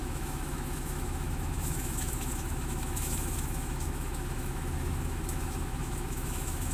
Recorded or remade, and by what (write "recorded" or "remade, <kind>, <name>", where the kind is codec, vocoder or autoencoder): remade, autoencoder, DAC-VAE